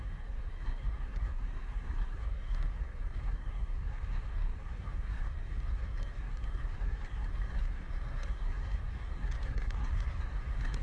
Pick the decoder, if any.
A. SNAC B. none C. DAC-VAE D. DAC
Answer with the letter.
A